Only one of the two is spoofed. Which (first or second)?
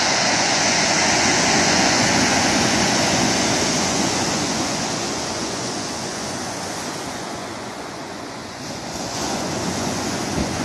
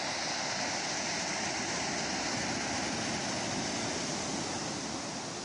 first